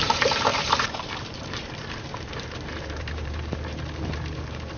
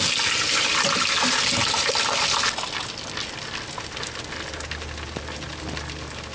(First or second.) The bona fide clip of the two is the second